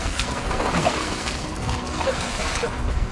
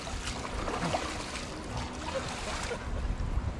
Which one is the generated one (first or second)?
first